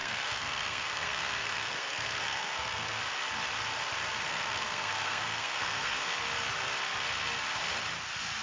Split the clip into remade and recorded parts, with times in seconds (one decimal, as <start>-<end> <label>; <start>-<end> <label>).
0.0-3.0 remade; 3.0-4.3 recorded; 4.3-6.2 remade; 6.2-8.4 recorded